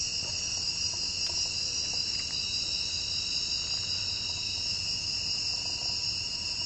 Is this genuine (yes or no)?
yes